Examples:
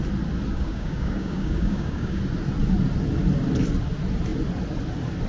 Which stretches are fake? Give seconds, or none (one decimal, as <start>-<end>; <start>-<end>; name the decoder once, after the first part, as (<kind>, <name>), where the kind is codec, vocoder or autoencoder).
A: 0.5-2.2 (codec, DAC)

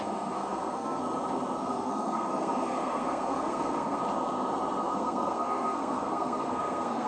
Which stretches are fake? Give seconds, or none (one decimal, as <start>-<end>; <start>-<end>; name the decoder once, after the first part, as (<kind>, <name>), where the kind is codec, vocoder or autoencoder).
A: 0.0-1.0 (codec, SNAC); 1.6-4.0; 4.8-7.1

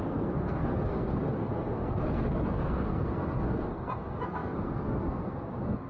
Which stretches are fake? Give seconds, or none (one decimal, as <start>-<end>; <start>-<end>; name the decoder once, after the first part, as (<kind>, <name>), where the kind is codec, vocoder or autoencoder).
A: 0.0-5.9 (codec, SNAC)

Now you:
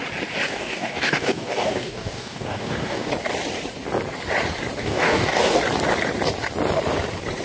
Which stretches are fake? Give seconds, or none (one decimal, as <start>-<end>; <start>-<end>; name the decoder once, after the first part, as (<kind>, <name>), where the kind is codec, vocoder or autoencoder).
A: 0.5-3.1 (codec, DAC); 4.8-5.6

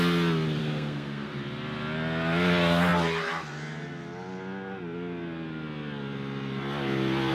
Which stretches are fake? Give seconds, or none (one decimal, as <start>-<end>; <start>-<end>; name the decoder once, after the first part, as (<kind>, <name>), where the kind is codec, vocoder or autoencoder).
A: 0.6-1.3 (codec, SNAC)